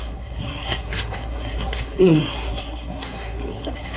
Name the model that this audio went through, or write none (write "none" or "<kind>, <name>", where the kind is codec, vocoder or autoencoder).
codec, SNAC